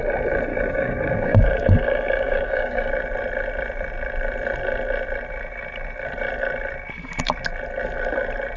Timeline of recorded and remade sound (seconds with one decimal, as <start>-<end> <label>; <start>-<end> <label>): 0.0-0.5 recorded; 0.5-2.9 remade; 2.9-8.6 recorded